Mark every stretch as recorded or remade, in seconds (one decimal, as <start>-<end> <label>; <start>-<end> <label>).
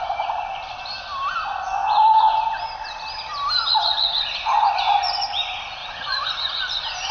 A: 0.0-5.8 recorded; 5.8-6.3 remade; 6.3-7.1 recorded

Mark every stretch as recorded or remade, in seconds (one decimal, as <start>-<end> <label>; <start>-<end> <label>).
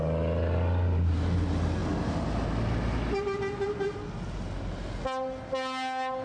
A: 0.0-6.2 recorded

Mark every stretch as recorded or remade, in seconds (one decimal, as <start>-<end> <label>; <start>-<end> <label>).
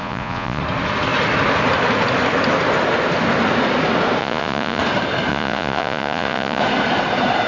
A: 0.0-0.6 remade; 0.6-4.2 recorded; 4.2-4.8 remade; 4.8-5.3 recorded; 5.3-6.6 remade; 6.6-7.5 recorded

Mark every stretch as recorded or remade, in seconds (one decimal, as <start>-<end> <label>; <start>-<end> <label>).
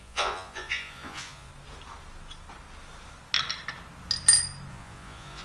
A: 0.0-1.5 remade; 1.5-4.7 recorded; 4.7-5.4 remade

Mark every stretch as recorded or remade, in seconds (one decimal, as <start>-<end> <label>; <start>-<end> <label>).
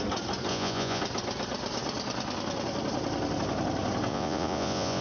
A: 0.0-0.5 recorded; 0.5-1.0 remade; 1.0-4.1 recorded; 4.1-5.0 remade